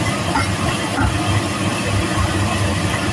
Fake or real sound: real